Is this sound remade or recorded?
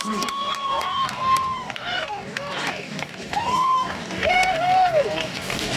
remade